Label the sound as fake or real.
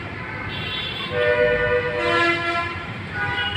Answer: real